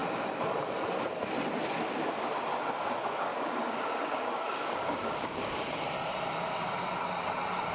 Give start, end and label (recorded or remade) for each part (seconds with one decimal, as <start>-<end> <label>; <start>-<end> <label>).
0.0-3.3 recorded; 3.3-5.6 remade; 5.6-7.7 recorded